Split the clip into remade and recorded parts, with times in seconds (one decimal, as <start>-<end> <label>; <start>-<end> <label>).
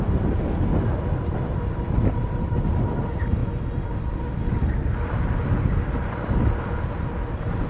0.0-7.7 recorded